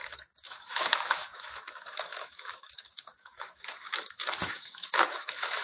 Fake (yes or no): yes